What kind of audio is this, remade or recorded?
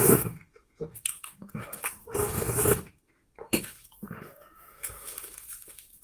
remade